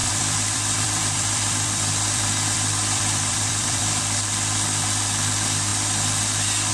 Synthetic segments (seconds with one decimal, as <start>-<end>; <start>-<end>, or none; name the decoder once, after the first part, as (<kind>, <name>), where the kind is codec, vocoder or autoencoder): 0.0-4.0 (vocoder, BigVGAN v2)